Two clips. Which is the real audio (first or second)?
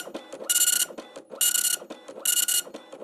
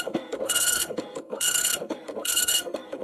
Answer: first